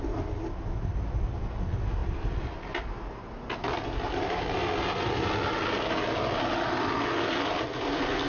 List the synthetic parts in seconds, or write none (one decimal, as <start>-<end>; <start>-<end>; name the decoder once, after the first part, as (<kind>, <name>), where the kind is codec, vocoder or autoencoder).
none